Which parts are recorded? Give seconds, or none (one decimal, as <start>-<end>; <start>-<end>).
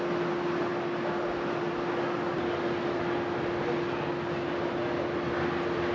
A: 0.0-5.9